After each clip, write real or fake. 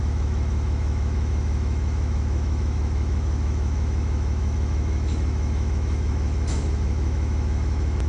fake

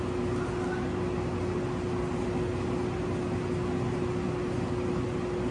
real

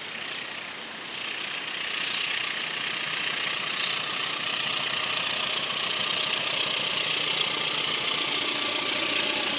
real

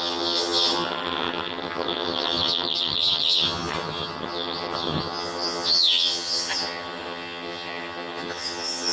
fake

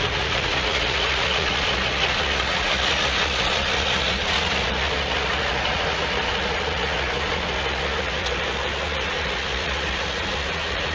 fake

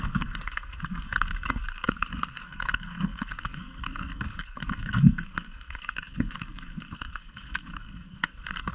fake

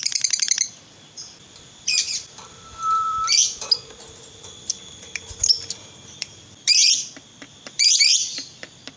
fake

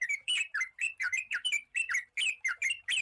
fake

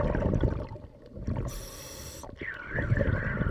real